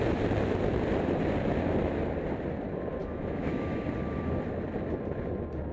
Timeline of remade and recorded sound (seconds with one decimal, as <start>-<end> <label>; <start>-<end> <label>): 0.0-3.0 recorded; 3.0-3.8 remade; 3.8-5.7 recorded